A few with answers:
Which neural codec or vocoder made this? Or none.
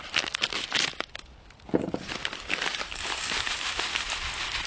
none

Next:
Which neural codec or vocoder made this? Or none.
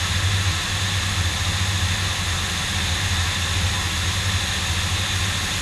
none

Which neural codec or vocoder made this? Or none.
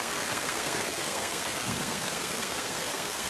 codec, SNAC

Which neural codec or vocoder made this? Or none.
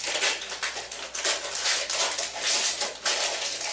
none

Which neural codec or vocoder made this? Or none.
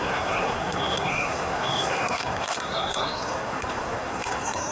codec, SNAC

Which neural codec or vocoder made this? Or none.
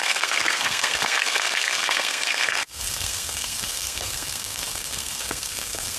codec, SNAC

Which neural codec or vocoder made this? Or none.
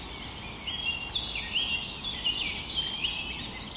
none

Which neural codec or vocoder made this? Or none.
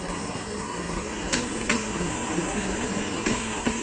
codec, SNAC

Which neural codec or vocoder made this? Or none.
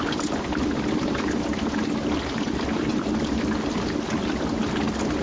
none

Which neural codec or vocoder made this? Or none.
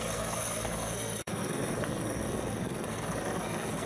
codec, SNAC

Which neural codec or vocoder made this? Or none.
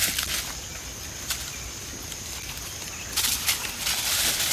none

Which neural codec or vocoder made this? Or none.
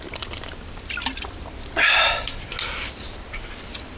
none